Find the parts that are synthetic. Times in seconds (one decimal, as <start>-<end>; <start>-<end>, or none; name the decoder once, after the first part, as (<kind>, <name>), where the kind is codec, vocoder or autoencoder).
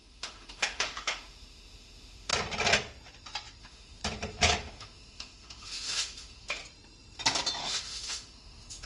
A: 0.0-2.3 (autoencoder, DAC-VAE); 3.6-4.0; 4.6-6.6; 7.6-8.9